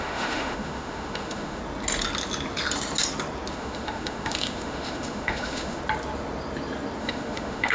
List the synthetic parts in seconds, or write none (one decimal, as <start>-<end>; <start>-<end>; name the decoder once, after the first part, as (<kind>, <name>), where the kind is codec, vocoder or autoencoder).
0.0-1.6 (autoencoder, DAC-VAE); 3.5-5.8; 7.0-7.7